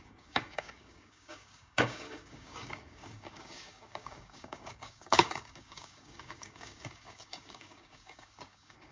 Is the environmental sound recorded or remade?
remade